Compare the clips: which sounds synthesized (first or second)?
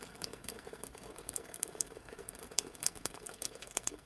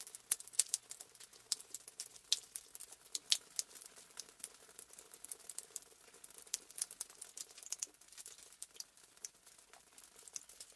first